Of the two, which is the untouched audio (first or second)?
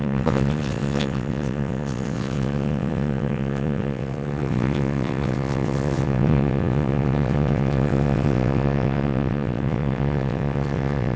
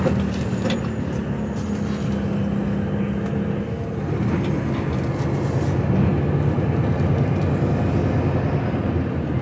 second